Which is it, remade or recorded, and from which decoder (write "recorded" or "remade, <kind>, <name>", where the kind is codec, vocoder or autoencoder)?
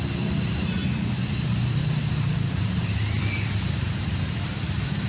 remade, vocoder, BigVGAN v2